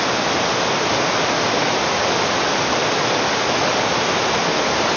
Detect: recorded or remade recorded